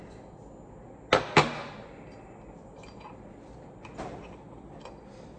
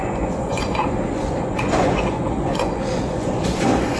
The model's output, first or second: second